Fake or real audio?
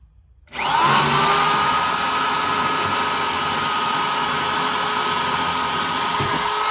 real